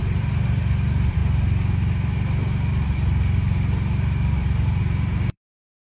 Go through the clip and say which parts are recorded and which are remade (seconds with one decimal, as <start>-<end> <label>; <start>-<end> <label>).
0.0-1.2 remade; 1.2-4.8 recorded; 4.8-6.0 remade